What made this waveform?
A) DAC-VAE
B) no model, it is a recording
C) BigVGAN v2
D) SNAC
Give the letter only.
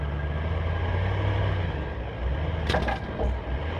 B